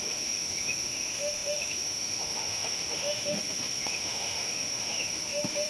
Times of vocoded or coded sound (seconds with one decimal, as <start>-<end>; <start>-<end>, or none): 0.0-5.7